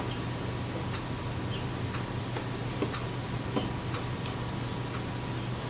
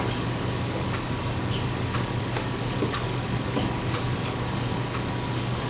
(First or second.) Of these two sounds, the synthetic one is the second